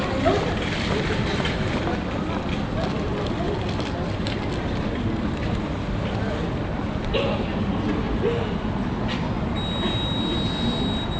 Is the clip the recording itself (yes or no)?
yes